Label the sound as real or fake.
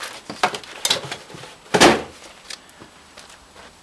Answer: real